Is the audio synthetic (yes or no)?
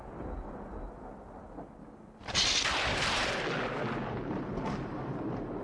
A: no